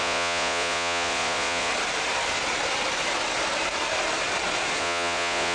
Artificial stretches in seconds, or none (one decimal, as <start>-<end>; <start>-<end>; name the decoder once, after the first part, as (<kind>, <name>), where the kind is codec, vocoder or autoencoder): 0.0-1.7 (vocoder, Vocos); 4.8-5.5